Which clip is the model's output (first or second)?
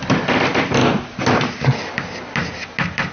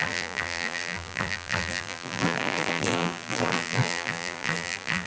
second